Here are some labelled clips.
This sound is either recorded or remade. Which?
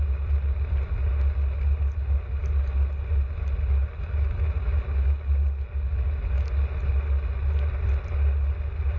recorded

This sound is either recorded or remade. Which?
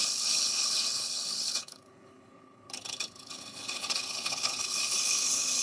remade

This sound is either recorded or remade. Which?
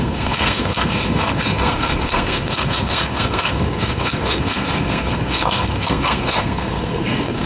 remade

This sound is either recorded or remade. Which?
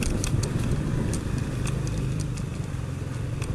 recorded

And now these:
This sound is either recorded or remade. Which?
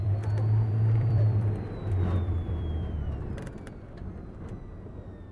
remade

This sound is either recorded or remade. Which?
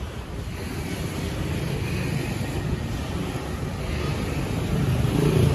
recorded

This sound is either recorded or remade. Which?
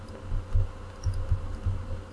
recorded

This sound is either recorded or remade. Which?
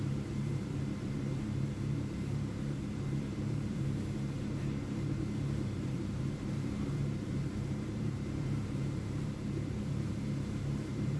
remade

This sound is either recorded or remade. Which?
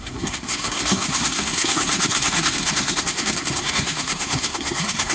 remade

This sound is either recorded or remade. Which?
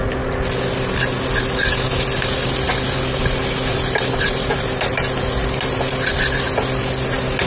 recorded